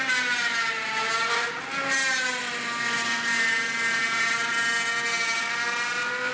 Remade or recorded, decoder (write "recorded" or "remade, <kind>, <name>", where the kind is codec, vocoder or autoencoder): recorded